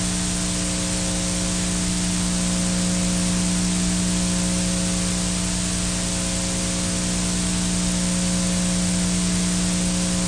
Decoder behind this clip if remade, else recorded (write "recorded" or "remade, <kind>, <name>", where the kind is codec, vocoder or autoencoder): recorded